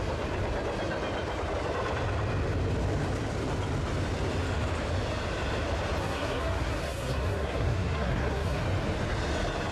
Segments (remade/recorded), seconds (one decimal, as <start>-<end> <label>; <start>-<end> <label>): 0.0-6.0 recorded; 6.0-8.6 remade; 8.6-9.7 recorded